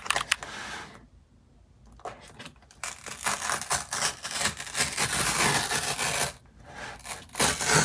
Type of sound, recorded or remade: recorded